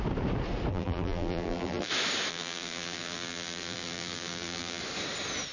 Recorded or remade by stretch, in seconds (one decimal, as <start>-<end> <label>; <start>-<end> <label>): 0.0-0.7 recorded; 0.7-1.9 remade; 1.9-2.3 recorded; 2.3-4.8 remade; 4.8-5.5 recorded